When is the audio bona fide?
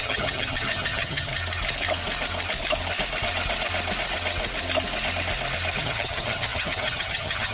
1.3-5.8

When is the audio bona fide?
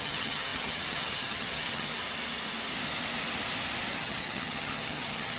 1.9-3.9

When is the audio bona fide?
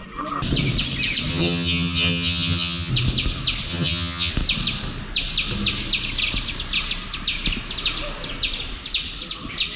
0.0-1.3; 2.9-3.7; 4.3-9.8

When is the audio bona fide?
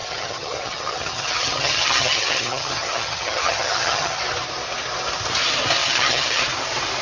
4.2-5.8; 6.4-7.0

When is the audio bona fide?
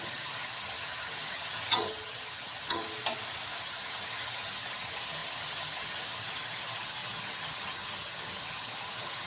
2.8-3.6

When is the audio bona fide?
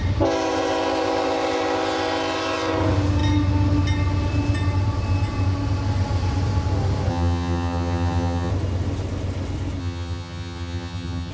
0.0-7.1; 8.5-9.8